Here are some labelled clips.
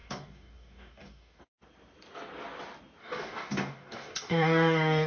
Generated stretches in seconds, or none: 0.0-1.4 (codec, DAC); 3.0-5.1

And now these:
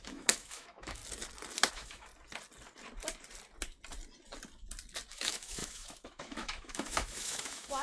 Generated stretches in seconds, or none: 0.0-1.0 (autoencoder, DAC-VAE); 1.7-2.1; 5.1-7.8

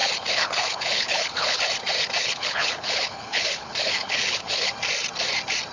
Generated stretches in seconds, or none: 0.0-1.6 (codec, HILCodec); 2.2-4.7

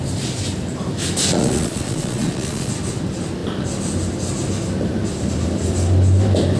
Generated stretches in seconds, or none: 1.3-2.7 (vocoder, Vocos)

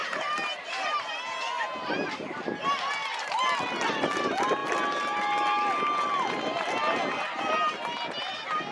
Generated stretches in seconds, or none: 0.0-0.9 (vocoder, BigVGAN v2)